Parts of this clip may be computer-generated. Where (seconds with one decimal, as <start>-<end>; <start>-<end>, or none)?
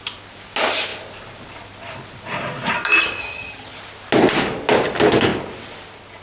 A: 3.2-3.8